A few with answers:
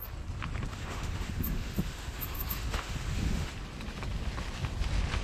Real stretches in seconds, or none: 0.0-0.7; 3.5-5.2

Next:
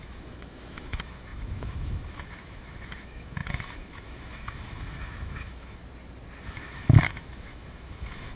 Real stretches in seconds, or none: 5.8-6.4

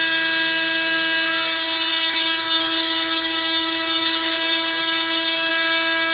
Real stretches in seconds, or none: 0.0-1.9; 5.5-6.1

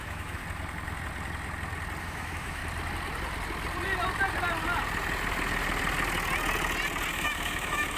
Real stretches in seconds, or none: 0.4-2.0; 2.6-7.1

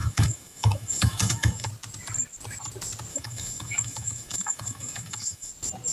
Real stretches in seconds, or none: 1.7-3.1; 5.5-5.9